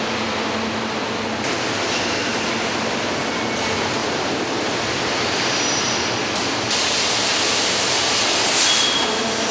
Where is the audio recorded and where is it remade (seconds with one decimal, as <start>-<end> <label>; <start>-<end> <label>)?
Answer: 0.0-9.5 recorded